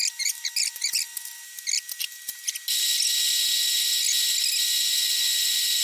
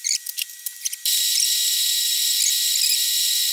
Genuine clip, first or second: first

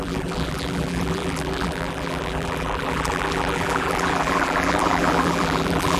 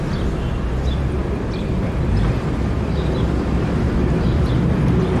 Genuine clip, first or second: second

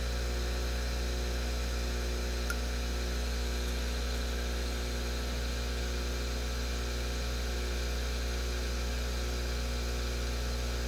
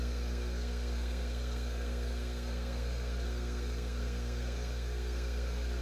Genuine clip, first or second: first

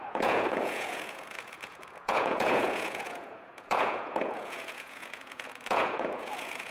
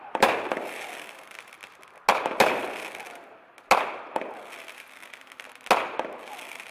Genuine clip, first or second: second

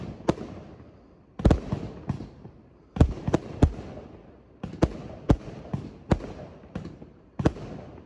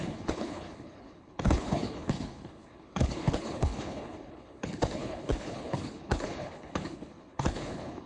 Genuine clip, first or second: first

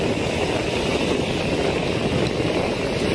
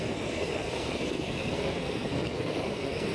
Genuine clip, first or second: first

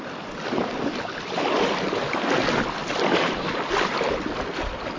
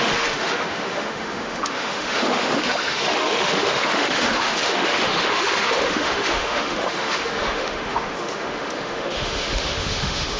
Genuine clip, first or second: first